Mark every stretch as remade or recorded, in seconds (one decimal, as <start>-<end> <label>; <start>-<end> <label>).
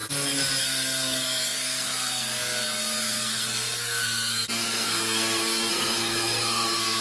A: 0.0-0.6 recorded; 0.6-7.0 remade